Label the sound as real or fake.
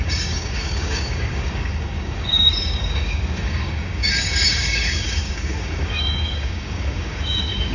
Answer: fake